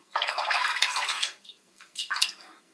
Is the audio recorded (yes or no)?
no